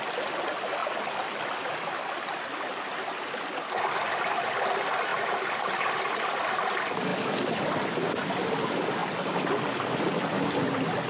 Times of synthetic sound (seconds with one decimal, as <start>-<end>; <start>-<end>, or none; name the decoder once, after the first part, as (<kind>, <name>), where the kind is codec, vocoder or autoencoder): none